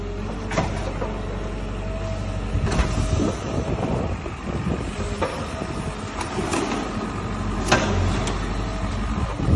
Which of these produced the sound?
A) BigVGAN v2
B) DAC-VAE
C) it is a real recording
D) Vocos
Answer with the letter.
C